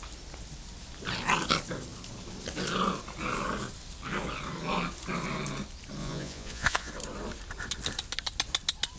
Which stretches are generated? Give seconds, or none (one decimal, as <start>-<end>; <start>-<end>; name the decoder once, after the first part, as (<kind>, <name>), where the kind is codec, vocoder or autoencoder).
6.0-6.9 (vocoder, Vocos)